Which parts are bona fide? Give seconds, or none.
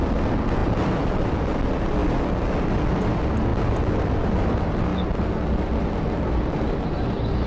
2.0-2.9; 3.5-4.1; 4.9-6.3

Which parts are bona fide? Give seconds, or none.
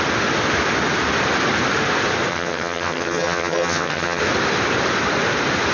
0.0-2.3; 4.2-5.7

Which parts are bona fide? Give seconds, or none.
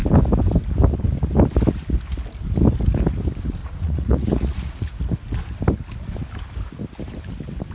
0.0-3.6; 5.0-7.7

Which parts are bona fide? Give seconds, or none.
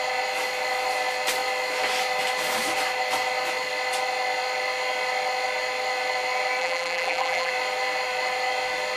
0.0-6.6; 7.5-9.0